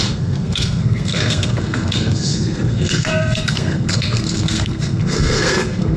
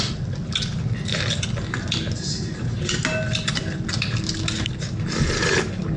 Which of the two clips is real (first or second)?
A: second